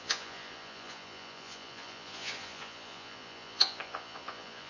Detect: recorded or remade remade